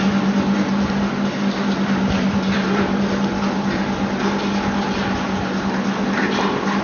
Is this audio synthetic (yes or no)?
no